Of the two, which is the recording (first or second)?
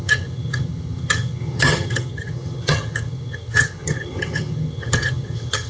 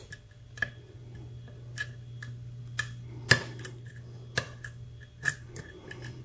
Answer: second